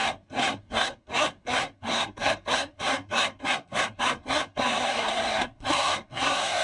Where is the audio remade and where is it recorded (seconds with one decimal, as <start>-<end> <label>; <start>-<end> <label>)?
0.0-6.6 remade